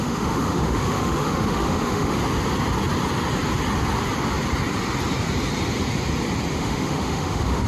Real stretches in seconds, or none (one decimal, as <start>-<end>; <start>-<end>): 2.2-6.5